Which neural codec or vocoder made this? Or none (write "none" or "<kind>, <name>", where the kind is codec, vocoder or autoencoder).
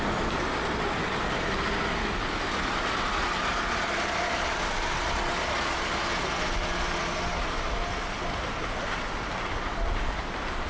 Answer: none